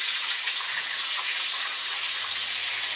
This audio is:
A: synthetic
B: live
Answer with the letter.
A